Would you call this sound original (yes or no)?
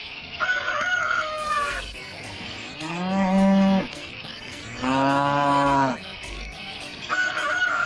no